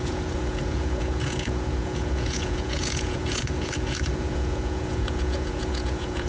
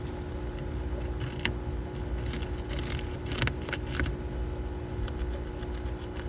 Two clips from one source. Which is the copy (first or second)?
first